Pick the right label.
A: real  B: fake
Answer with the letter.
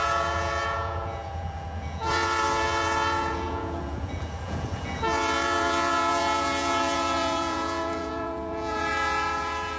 B